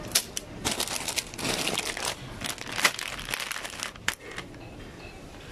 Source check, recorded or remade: recorded